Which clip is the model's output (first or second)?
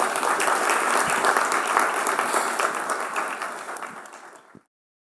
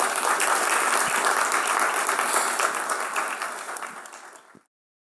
first